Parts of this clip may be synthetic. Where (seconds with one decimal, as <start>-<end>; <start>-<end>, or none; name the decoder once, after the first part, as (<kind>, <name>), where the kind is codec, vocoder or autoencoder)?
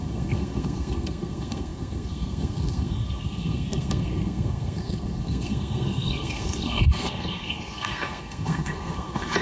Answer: 0.0-9.4 (codec, SNAC)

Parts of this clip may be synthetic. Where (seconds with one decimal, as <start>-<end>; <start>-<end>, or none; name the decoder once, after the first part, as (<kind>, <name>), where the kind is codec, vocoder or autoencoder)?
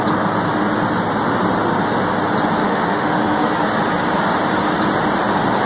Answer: 2.6-3.5 (autoencoder, DAC-VAE)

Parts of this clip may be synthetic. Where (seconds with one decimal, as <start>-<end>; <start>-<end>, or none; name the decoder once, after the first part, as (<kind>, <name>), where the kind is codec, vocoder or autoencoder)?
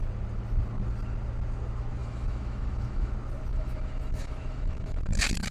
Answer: 2.0-3.1 (autoencoder, DAC-VAE); 3.5-5.0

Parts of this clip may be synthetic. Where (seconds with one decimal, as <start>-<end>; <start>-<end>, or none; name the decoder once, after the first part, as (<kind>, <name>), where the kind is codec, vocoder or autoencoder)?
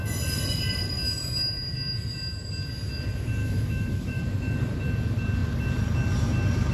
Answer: 3.4-4.2 (autoencoder, DAC-VAE)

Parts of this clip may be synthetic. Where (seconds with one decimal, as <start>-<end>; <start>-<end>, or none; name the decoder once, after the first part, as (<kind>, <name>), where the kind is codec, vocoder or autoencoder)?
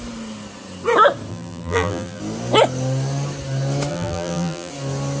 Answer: 1.3-2.2 (vocoder, BigVGAN v2); 3.9-4.7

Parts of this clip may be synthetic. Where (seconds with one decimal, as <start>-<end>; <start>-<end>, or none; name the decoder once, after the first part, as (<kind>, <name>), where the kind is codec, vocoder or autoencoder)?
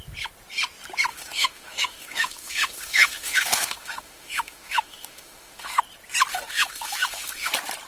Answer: 1.1-5.8 (autoencoder, DAC-VAE); 6.3-7.5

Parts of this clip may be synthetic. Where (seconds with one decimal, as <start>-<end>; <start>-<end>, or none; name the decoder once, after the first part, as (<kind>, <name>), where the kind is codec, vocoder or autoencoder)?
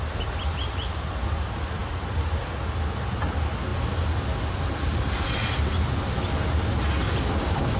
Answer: 3.7-5.0 (vocoder, BigVGAN v2); 7.0-7.8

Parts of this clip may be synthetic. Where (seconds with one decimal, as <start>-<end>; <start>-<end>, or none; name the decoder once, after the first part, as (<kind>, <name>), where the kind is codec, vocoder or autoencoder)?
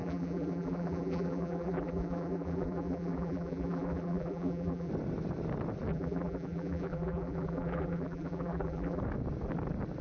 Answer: 0.0-4.9 (vocoder, BigVGAN v2); 5.9-9.0